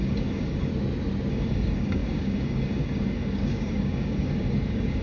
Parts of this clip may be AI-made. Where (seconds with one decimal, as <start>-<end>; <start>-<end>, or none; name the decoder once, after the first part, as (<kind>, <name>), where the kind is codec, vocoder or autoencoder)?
0.0-0.7 (codec, DAC); 1.3-5.0